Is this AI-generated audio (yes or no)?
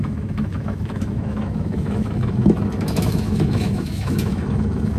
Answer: yes